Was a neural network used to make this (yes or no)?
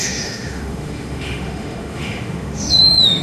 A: yes